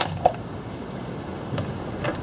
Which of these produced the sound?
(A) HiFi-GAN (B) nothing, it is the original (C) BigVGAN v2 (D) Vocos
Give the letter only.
B